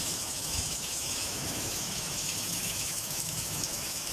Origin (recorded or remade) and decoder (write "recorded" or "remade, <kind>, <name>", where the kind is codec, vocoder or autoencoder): remade, autoencoder, DAC-VAE